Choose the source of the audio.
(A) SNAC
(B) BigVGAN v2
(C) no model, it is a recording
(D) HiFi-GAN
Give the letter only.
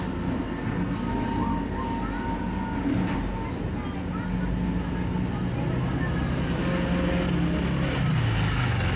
C